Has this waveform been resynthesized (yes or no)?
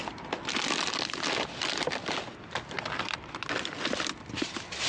no